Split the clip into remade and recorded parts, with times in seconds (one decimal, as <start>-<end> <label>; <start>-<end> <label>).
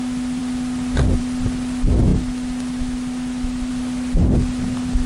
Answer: 0.0-5.1 recorded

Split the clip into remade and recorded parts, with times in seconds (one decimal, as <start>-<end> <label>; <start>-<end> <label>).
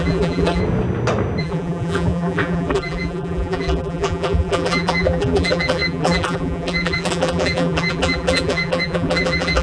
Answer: 0.0-0.6 remade; 0.6-1.4 recorded; 1.4-9.6 remade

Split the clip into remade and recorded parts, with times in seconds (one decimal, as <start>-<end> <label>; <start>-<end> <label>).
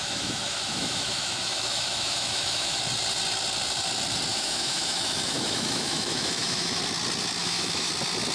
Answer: 0.0-2.8 remade; 2.8-4.3 recorded; 4.3-6.8 remade; 6.8-7.4 recorded; 7.4-7.9 remade; 7.9-8.3 recorded